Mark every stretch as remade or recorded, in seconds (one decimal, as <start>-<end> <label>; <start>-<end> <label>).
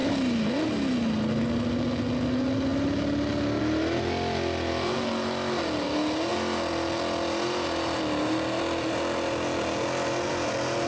0.0-10.9 recorded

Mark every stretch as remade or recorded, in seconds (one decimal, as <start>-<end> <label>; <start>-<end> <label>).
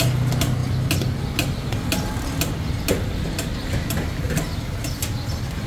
0.0-5.7 recorded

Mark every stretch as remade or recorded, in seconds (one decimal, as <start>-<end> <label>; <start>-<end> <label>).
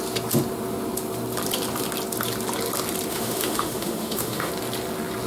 0.0-3.1 recorded; 3.1-4.5 remade; 4.5-5.3 recorded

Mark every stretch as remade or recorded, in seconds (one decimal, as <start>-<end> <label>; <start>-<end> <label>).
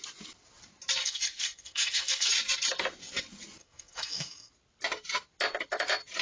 0.0-1.0 recorded; 1.0-2.3 remade; 2.3-3.6 recorded; 3.6-4.5 remade; 4.5-6.2 recorded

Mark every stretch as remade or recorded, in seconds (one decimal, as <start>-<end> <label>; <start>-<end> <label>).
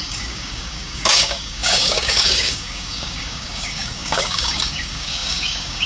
0.0-5.9 remade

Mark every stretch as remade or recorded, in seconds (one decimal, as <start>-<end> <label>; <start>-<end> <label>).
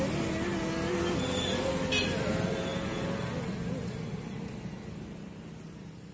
0.0-6.1 recorded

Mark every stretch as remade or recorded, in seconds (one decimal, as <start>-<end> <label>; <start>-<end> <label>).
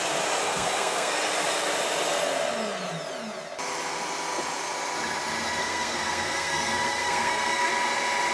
0.0-0.4 recorded; 0.4-1.1 remade; 1.1-5.6 recorded; 5.6-7.7 remade; 7.7-8.3 recorded